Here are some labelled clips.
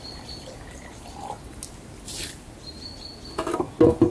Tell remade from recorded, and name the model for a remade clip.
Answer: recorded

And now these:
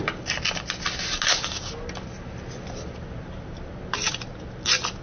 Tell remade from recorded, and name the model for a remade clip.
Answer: recorded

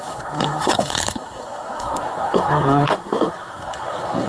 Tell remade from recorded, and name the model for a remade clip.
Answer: remade, codec, SNAC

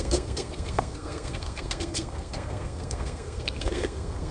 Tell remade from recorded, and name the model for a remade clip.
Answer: remade, codec, SNAC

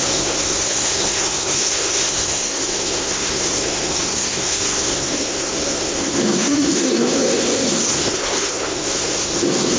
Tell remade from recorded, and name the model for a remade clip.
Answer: remade, codec, SNAC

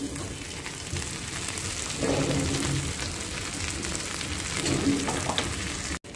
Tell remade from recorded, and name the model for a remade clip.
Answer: recorded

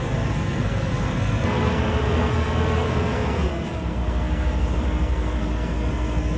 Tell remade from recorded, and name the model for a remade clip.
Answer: remade, codec, SNAC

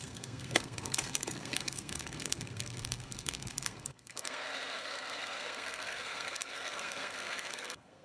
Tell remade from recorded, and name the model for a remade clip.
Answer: remade, codec, SNAC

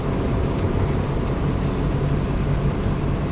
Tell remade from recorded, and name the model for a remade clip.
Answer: recorded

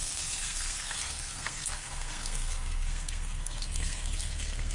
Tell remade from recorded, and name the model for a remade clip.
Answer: remade, codec, SNAC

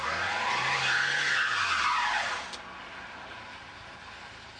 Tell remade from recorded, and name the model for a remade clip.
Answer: recorded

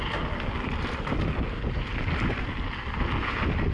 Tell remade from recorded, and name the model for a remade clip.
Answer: recorded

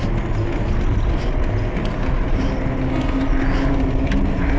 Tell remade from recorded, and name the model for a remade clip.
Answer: recorded